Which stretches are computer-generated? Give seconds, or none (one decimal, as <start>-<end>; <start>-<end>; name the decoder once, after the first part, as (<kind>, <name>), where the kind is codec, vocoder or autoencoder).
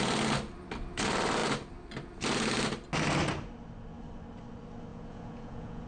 4.9-5.9 (vocoder, Vocos)